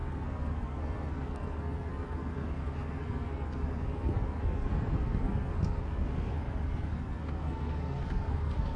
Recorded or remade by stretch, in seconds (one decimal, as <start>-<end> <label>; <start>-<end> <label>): 0.0-8.8 remade